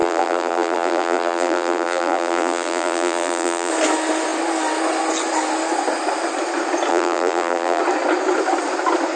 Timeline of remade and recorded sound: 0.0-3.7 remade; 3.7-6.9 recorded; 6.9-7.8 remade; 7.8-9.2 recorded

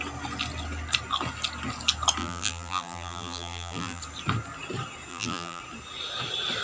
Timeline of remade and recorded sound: 0.0-2.2 recorded; 2.2-4.0 remade; 4.0-5.1 recorded; 5.1-5.6 remade; 5.6-6.6 recorded

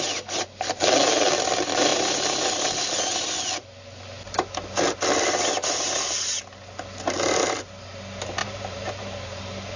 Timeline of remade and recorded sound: 0.0-1.9 recorded; 1.9-2.9 remade; 2.9-8.4 recorded; 8.4-9.4 remade; 9.4-9.8 recorded